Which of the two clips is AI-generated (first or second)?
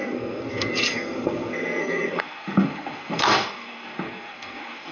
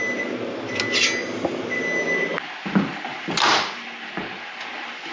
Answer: first